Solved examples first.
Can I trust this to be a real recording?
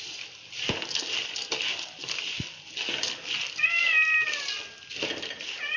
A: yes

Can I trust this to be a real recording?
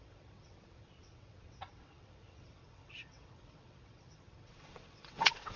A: no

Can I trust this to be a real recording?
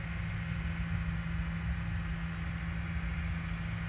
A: yes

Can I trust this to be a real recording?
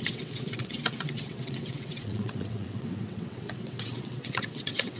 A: no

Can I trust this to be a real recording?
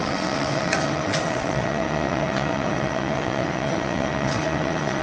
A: no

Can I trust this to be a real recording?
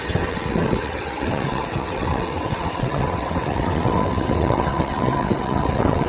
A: no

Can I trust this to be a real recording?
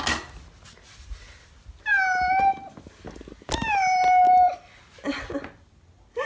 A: yes